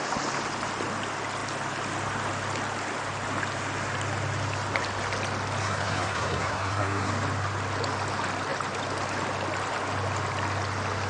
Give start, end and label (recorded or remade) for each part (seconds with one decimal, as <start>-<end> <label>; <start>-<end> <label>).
0.0-5.6 recorded; 5.6-7.1 remade; 7.1-11.1 recorded